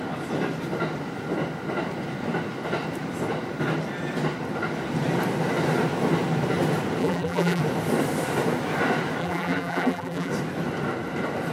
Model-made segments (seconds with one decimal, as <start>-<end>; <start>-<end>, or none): 7.0-7.6; 9.2-10.3